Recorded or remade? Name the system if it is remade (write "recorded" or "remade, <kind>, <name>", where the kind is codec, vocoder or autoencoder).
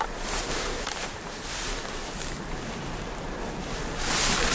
recorded